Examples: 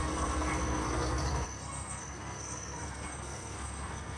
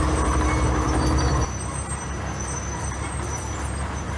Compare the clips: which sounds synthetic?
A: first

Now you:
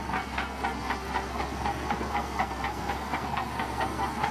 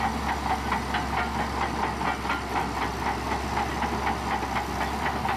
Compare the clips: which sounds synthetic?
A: first